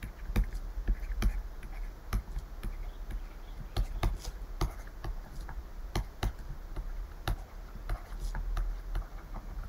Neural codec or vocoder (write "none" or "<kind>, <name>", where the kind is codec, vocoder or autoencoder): none